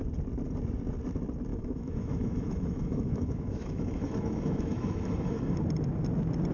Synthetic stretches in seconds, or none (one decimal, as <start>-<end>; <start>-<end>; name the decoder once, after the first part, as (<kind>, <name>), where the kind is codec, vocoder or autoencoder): 1.5-5.4 (autoencoder, DAC-VAE)